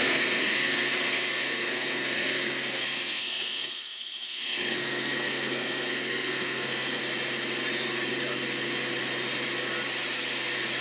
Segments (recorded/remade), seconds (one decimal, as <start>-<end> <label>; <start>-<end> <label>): 0.0-7.0 remade; 7.0-10.8 recorded